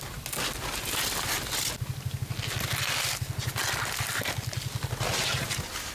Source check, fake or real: real